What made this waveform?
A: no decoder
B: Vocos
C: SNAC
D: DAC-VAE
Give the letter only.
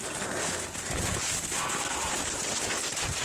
A